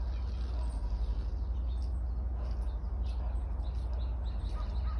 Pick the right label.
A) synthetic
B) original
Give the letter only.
B